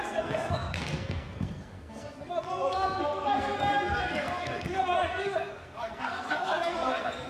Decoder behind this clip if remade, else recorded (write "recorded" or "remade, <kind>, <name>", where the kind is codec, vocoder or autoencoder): remade, codec, SNAC